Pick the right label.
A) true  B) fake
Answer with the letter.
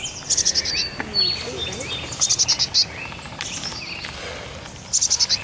A